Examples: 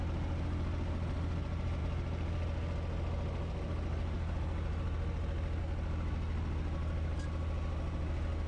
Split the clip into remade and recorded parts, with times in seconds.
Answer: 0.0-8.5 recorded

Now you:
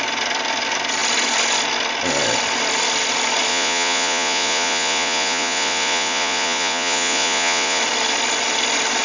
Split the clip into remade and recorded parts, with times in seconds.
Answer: 0.0-3.5 recorded; 3.5-7.8 remade; 7.8-9.0 recorded

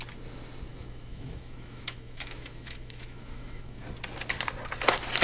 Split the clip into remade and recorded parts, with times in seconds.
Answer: 0.0-0.7 recorded; 0.7-3.8 remade; 3.8-5.2 recorded

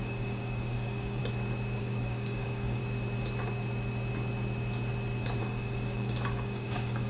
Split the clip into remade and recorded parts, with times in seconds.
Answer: 0.0-1.2 remade; 1.2-1.8 recorded; 1.8-2.8 remade; 2.8-5.4 recorded; 5.4-7.1 remade

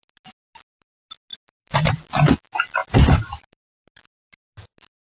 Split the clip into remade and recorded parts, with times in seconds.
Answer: 0.0-5.0 recorded